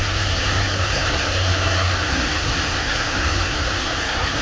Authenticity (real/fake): fake